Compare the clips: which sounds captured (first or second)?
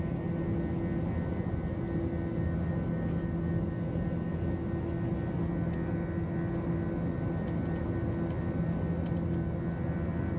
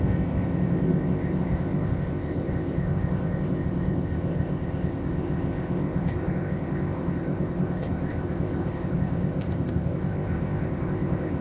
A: first